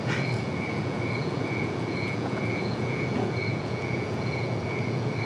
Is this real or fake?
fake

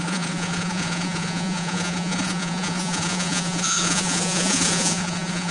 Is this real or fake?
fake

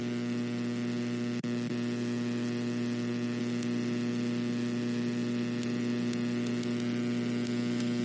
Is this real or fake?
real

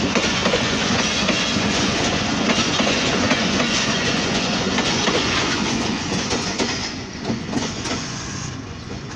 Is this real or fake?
fake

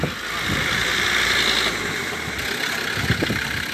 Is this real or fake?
real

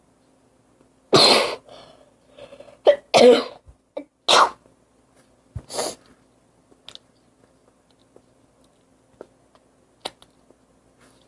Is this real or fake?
real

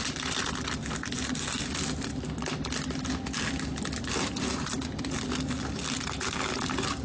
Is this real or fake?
real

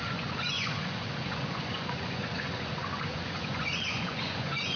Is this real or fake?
fake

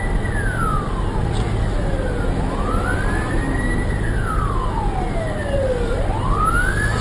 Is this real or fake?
real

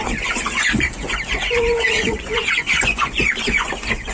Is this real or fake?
fake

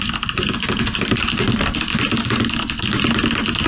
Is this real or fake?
real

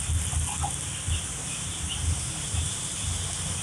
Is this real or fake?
real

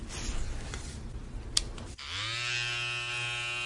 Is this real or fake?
real